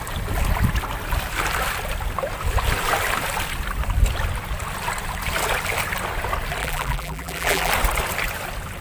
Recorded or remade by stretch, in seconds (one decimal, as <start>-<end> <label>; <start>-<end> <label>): 0.0-6.6 recorded; 6.6-7.7 remade; 7.7-8.8 recorded